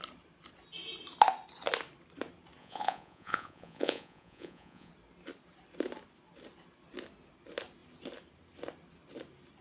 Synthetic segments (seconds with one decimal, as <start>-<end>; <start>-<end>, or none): 2.6-4.9